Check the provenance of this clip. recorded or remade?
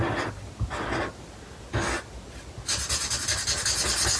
recorded